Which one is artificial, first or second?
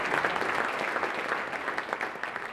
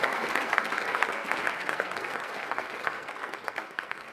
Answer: second